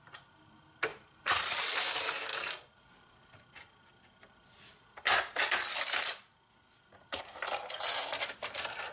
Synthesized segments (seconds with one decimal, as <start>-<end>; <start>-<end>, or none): 0.9-1.7